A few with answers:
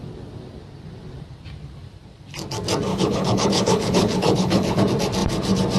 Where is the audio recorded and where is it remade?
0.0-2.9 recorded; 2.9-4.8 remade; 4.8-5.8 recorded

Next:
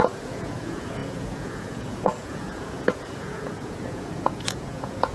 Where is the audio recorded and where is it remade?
0.0-5.1 remade